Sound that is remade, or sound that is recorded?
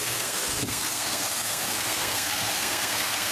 remade